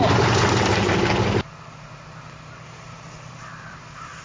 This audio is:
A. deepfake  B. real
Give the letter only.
B